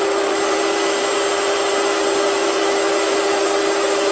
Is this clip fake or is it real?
real